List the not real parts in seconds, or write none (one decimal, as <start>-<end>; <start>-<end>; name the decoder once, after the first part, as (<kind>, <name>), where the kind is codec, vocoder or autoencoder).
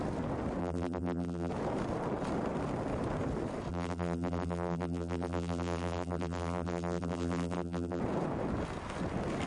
0.6-1.5 (vocoder, BigVGAN v2); 3.7-8.0